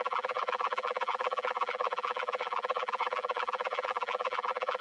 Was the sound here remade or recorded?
remade